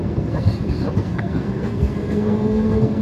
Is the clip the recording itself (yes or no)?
no